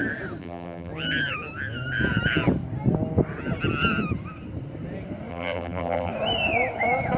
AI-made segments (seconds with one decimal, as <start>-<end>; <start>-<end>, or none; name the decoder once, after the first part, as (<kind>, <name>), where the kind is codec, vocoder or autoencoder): 0.4-0.9 (vocoder, BigVGAN v2); 5.3-6.1